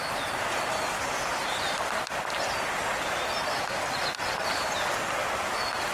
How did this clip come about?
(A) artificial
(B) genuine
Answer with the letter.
B